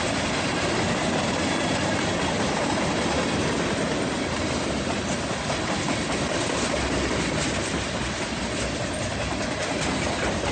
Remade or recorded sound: recorded